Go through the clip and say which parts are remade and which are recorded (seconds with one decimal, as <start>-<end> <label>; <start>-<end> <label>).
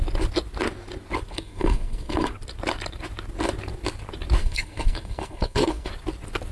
0.0-1.3 recorded; 1.3-2.3 remade; 2.3-4.4 recorded; 4.4-5.9 remade; 5.9-6.5 recorded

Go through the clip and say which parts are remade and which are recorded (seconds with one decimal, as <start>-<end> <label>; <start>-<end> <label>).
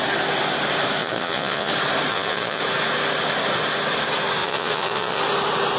0.0-1.0 recorded; 1.0-1.7 remade; 1.7-2.1 recorded; 2.1-2.6 remade; 2.6-4.4 recorded; 4.4-5.2 remade; 5.2-5.8 recorded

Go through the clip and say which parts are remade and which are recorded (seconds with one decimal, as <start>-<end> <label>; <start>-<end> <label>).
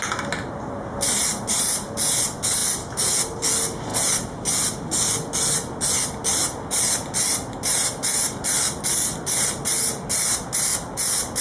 0.0-11.4 recorded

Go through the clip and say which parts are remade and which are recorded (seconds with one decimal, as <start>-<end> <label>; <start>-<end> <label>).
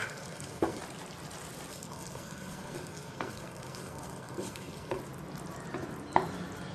0.0-0.8 remade; 0.8-1.7 recorded; 1.7-5.0 remade; 5.0-6.7 recorded